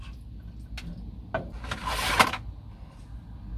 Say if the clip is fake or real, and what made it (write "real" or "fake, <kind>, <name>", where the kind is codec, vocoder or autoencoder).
real